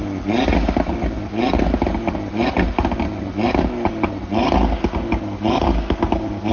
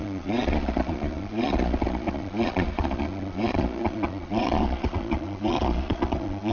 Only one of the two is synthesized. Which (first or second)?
second